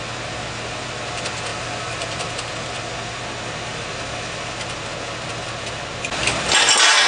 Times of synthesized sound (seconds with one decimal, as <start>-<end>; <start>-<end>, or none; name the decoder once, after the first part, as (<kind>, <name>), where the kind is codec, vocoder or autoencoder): none